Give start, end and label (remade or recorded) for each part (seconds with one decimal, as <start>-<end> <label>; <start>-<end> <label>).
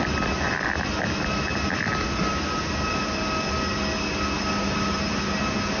0.0-5.8 recorded